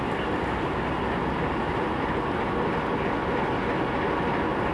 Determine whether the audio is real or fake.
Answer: real